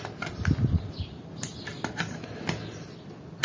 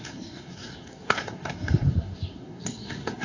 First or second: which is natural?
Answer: first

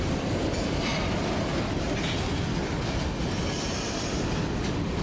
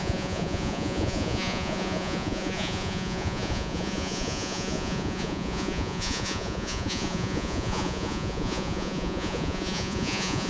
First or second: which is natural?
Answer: first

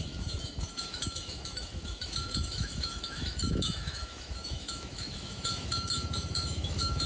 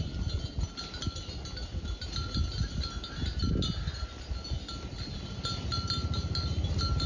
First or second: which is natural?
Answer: second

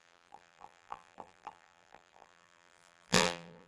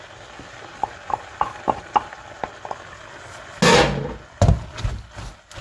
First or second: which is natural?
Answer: second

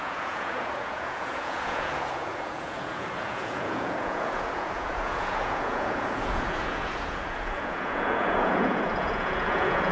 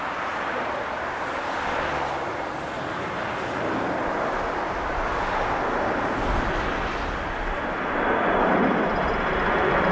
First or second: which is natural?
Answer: second